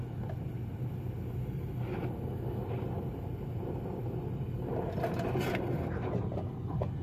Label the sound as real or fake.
real